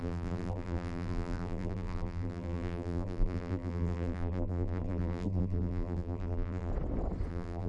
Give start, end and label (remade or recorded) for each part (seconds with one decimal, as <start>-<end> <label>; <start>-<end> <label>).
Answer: 0.0-6.7 remade; 6.7-7.3 recorded; 7.3-7.7 remade